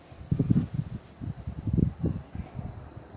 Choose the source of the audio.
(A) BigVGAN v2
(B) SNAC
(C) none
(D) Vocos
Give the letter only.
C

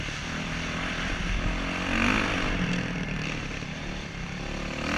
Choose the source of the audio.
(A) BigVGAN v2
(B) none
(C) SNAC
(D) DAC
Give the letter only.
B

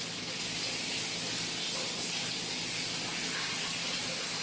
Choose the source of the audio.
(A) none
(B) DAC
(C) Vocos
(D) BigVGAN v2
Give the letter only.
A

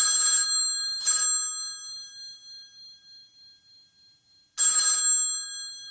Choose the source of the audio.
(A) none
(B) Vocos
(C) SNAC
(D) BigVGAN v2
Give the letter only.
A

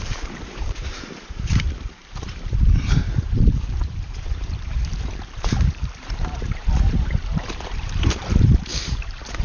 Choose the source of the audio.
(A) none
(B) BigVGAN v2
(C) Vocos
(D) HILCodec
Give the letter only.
B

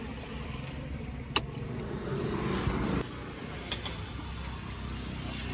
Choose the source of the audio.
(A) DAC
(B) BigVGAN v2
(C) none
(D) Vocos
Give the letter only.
C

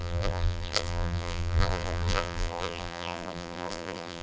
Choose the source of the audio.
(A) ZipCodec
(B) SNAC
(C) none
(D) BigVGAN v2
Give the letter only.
D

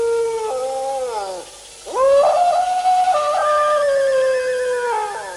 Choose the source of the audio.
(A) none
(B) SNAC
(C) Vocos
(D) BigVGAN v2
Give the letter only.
A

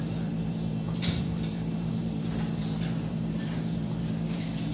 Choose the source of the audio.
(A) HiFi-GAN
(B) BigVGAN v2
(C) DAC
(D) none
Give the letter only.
B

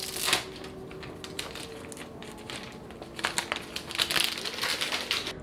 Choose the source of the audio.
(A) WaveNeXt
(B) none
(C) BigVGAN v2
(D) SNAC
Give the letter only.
B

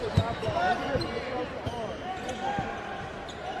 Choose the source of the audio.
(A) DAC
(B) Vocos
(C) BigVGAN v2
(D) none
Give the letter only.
D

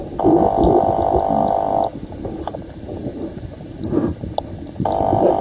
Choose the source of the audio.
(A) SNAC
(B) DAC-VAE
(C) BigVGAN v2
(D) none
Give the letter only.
D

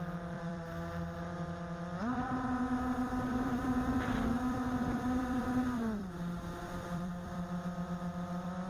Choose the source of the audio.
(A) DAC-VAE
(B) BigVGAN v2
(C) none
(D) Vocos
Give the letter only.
B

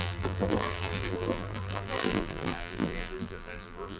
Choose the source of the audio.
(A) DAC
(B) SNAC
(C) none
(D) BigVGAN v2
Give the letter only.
D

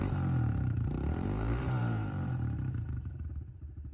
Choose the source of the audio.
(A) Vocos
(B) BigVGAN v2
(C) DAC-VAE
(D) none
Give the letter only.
B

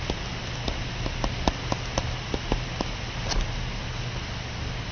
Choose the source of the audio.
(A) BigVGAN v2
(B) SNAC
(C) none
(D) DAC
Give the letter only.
C